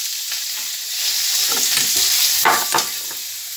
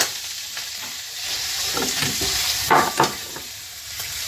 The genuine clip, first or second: first